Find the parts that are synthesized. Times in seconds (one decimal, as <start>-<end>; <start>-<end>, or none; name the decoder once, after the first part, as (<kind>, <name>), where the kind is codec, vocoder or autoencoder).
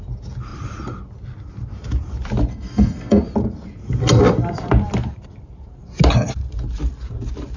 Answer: 2.5-3.2 (codec, SNAC)